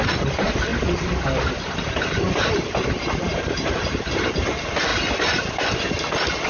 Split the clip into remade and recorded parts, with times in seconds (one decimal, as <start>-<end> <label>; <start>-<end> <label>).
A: 0.0-0.7 remade; 0.7-1.5 recorded; 1.5-4.9 remade; 4.9-5.8 recorded; 5.8-6.5 remade

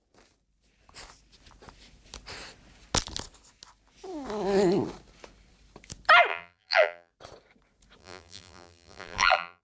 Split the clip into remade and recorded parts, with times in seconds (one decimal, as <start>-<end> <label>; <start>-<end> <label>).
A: 0.0-6.3 recorded; 6.3-7.1 remade; 7.1-8.0 recorded; 8.0-9.6 remade

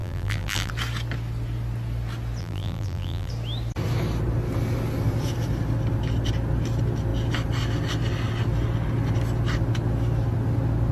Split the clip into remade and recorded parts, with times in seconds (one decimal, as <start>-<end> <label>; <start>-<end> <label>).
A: 0.0-0.7 remade; 0.7-2.4 recorded; 2.4-3.3 remade; 3.3-10.9 recorded

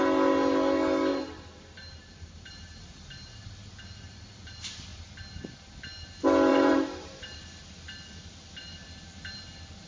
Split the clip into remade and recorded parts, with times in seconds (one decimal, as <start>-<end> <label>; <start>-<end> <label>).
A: 0.0-1.1 recorded; 1.1-2.5 remade; 2.5-6.5 recorded; 6.5-7.4 remade; 7.4-9.9 recorded

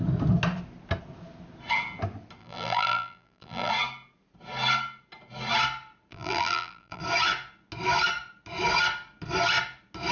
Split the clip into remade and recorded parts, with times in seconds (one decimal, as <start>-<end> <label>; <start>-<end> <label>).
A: 0.0-2.4 recorded; 2.4-3.7 remade; 3.7-6.1 recorded; 6.1-7.0 remade; 7.0-10.1 recorded